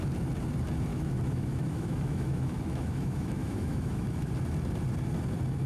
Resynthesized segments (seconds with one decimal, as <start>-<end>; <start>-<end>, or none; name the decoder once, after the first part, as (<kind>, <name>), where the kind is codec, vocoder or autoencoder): 0.9-4.3 (autoencoder, DAC-VAE)